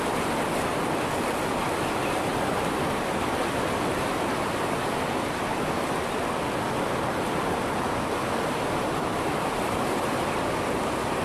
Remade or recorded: recorded